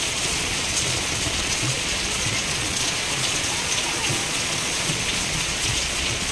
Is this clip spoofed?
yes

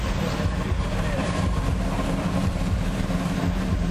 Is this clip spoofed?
yes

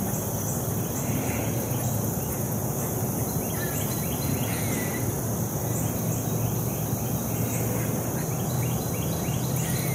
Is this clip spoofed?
no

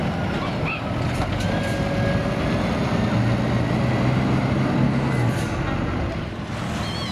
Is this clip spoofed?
no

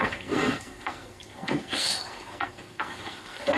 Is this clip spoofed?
yes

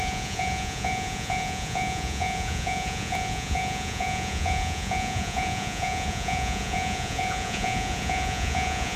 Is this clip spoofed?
yes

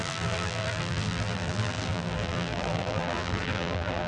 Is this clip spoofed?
yes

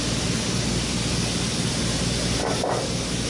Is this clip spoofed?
no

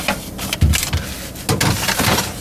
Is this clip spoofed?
no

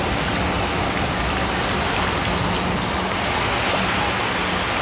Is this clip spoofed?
no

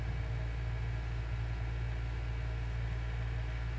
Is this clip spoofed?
no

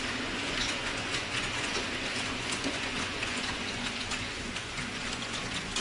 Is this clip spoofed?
yes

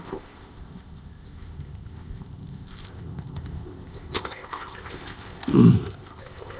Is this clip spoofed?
yes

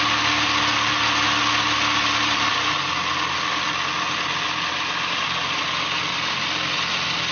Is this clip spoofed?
no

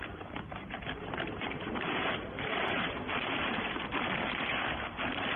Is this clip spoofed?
yes